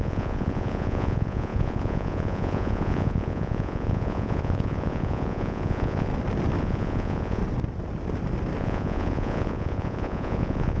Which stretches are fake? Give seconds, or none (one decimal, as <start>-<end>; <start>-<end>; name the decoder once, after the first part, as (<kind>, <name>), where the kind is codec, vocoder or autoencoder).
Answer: 0.0-6.1 (vocoder, Vocos); 6.6-7.4; 8.6-10.8